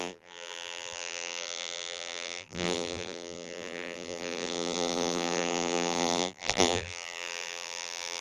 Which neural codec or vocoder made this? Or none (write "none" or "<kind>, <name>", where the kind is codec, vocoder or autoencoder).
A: vocoder, BigVGAN v2